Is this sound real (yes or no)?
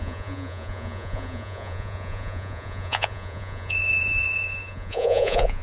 no